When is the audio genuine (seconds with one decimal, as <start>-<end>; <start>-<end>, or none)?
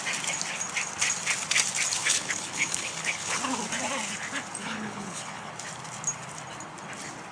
0.0-2.0; 3.4-4.6; 5.5-7.3